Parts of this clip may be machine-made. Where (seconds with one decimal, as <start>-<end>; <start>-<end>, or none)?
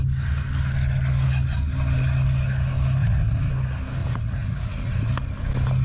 3.0-3.5; 4.0-5.1